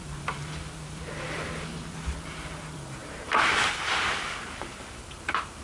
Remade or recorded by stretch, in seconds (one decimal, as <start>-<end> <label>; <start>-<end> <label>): 0.0-5.6 remade